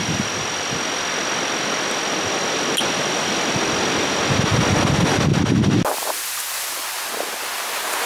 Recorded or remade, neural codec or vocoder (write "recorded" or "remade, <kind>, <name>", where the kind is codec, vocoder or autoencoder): recorded